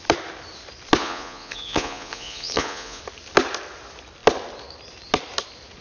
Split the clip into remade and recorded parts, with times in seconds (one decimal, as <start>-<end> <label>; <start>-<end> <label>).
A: 0.0-1.0 recorded; 1.0-3.0 remade; 3.0-5.8 recorded